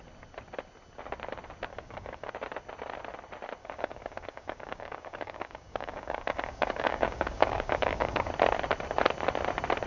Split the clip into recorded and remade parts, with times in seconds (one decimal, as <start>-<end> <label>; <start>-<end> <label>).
0.0-1.7 recorded; 1.7-2.3 remade; 2.3-3.6 recorded; 3.6-8.3 remade; 8.3-9.9 recorded